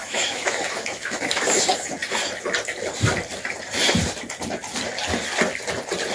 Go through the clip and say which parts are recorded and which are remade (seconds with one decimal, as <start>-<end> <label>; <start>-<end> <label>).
0.0-1.6 remade; 1.6-6.1 recorded